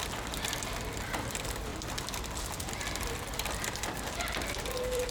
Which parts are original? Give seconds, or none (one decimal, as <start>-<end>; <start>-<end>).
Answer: 0.6-1.7